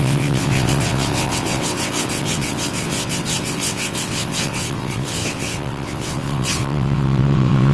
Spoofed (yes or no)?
yes